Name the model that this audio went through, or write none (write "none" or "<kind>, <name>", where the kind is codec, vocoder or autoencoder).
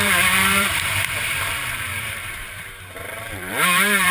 vocoder, BigVGAN v2